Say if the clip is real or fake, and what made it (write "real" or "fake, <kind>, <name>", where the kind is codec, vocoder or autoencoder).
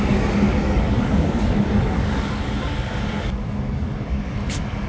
fake, codec, DAC